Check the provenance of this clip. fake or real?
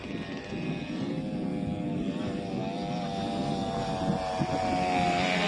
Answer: real